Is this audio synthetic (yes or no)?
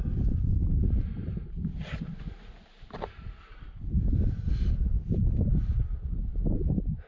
no